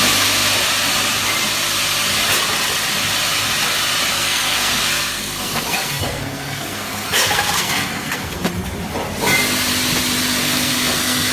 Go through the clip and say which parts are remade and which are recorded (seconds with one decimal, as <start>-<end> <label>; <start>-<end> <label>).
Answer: 0.0-4.1 recorded; 4.1-8.5 remade; 8.5-10.4 recorded; 10.4-11.3 remade